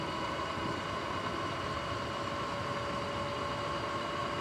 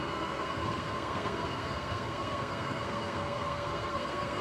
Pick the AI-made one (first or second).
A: second